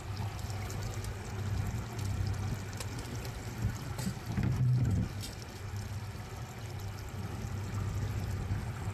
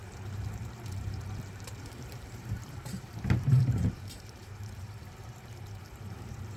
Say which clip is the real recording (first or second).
first